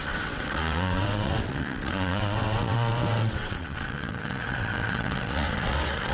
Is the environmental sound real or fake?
fake